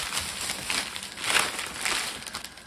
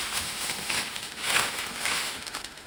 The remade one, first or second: second